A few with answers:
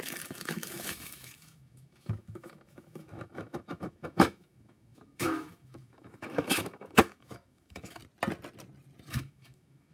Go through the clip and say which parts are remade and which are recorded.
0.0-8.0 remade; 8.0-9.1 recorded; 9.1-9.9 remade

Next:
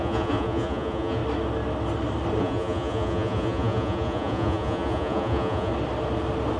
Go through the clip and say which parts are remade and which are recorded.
0.0-1.2 remade; 1.2-2.4 recorded; 2.4-5.7 remade; 5.7-6.6 recorded

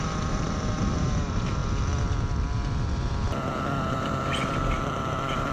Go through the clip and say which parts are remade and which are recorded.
0.0-1.6 remade; 1.6-3.9 recorded; 3.9-5.5 remade